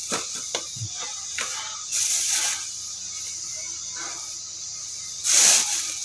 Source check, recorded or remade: recorded